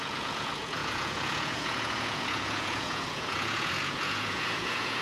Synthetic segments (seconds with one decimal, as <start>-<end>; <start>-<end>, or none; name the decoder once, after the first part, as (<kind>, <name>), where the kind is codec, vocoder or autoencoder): 0.0-5.0 (vocoder, Vocos)